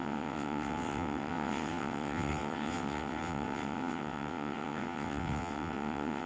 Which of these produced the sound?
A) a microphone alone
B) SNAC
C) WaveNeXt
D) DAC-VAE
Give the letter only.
C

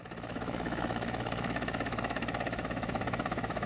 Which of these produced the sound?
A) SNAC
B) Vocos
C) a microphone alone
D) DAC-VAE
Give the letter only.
D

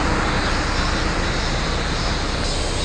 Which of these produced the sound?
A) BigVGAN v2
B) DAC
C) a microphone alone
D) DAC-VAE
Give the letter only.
C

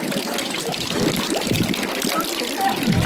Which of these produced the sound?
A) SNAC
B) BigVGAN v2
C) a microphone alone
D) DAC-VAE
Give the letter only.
B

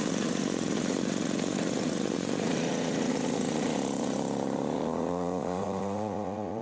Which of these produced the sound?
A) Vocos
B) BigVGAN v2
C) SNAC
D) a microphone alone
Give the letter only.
A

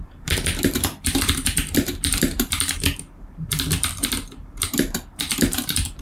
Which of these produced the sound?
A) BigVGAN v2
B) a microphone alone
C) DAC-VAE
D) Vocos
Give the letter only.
A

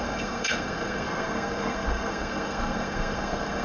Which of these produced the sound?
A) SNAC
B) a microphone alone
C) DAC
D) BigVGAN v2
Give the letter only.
A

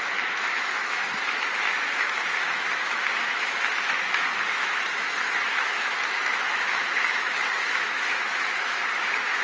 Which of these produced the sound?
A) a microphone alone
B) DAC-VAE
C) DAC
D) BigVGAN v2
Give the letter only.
B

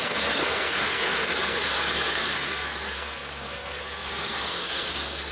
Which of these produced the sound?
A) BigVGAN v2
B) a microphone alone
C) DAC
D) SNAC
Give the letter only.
D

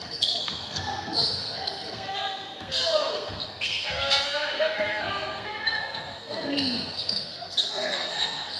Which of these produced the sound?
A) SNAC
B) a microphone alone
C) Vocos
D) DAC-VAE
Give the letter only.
A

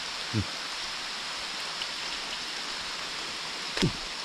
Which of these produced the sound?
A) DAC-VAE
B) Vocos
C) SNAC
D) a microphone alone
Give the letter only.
D